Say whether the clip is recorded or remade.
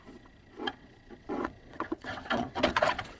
remade